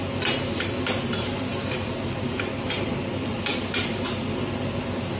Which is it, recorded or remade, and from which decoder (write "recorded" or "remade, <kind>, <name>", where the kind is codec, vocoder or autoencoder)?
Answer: recorded